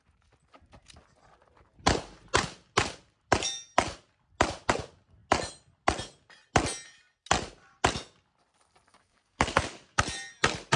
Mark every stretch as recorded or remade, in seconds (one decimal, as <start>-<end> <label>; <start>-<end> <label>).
0.0-8.9 recorded; 8.9-10.0 remade; 10.0-10.8 recorded